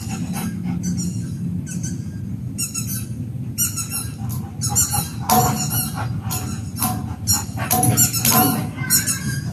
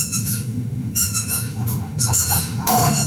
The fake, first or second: second